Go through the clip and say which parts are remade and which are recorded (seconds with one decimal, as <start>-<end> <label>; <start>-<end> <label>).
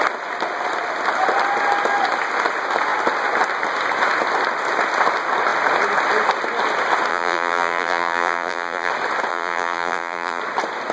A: 0.0-7.1 recorded; 7.1-8.9 remade; 8.9-9.3 recorded; 9.3-10.4 remade; 10.4-10.9 recorded